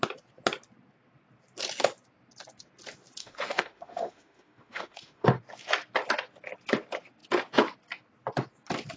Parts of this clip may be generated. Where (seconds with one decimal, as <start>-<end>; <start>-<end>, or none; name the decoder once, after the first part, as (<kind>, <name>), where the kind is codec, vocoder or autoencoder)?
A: 3.2-5.4 (autoencoder, DAC-VAE)